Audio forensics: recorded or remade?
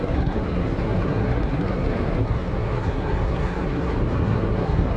remade